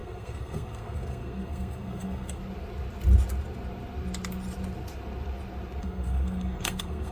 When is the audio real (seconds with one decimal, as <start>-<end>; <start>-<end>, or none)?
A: 2.4-5.8